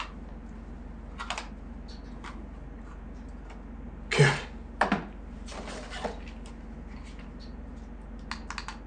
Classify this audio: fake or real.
real